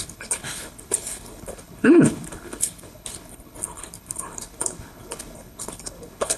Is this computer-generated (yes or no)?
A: yes